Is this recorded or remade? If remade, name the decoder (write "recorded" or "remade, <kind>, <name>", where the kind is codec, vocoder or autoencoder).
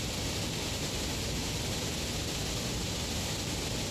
recorded